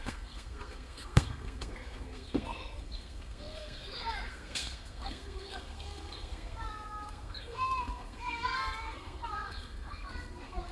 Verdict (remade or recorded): remade